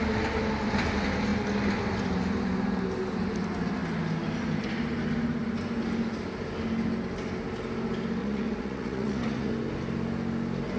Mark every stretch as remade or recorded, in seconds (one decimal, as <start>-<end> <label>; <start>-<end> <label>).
0.0-8.2 recorded; 8.2-9.5 remade; 9.5-10.8 recorded